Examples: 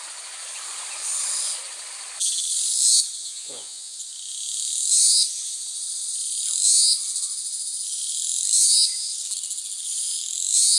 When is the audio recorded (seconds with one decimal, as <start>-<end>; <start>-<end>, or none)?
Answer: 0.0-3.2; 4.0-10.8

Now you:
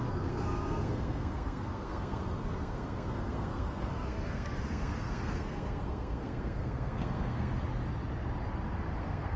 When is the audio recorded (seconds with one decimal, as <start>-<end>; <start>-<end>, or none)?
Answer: 7.5-9.0

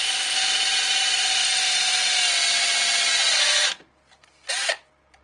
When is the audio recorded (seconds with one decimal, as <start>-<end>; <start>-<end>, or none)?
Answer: 0.0-5.2